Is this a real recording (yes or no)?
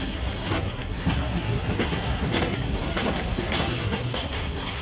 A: no